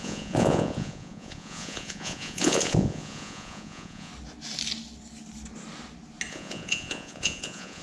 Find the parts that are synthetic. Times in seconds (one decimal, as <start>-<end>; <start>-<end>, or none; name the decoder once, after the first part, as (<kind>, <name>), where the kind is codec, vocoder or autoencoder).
0.0-4.1 (vocoder, Vocos); 6.3-7.8